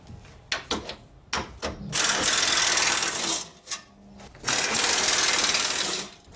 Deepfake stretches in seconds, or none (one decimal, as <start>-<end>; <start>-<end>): none